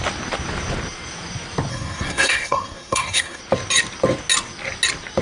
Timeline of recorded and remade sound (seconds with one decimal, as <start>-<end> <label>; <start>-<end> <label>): 0.0-1.7 recorded; 1.7-3.4 remade; 3.4-5.2 recorded